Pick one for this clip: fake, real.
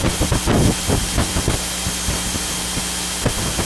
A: real